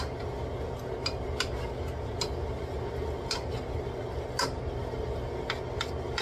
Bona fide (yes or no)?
yes